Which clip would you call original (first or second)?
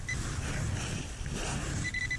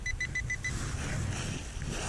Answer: second